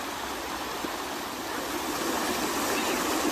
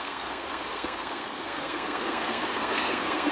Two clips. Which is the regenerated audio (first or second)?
second